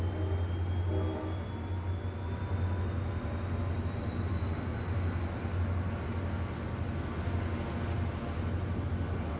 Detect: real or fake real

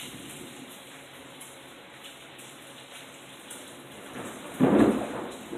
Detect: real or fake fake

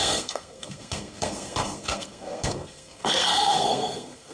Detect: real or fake fake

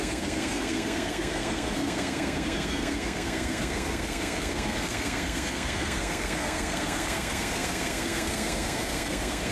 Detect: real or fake fake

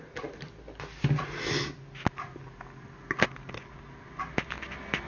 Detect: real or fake real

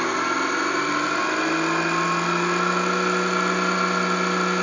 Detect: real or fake real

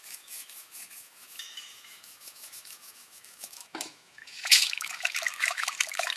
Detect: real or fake fake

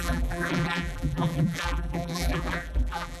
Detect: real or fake fake